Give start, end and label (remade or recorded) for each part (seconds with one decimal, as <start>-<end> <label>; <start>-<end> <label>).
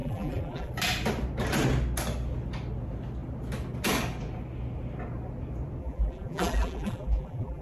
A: 0.0-0.7 remade; 0.7-5.8 recorded; 5.8-7.6 remade